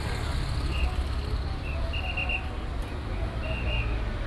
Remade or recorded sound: recorded